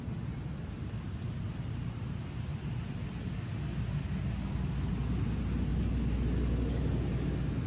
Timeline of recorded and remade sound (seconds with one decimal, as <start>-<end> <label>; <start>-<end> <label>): 0.0-7.7 recorded